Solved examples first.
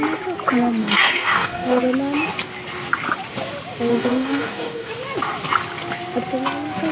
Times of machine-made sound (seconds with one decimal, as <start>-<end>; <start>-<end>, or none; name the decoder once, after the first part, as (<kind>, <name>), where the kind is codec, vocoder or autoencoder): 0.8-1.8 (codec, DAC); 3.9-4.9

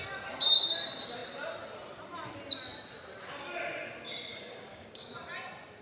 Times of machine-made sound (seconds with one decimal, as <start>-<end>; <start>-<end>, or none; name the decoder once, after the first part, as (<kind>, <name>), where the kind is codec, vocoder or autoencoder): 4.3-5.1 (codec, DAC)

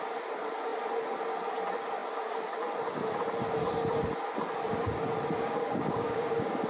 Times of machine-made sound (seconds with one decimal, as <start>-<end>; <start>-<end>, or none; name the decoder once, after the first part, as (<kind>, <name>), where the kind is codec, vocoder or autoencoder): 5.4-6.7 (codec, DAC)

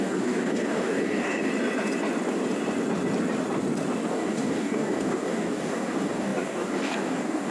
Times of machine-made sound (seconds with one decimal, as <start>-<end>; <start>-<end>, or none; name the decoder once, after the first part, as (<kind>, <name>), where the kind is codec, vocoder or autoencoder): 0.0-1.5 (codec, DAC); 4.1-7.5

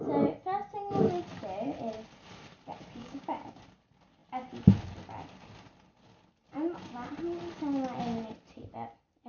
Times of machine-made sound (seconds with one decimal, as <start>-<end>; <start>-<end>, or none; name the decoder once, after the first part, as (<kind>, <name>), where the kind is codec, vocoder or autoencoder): 3.0-3.6 (codec, DAC)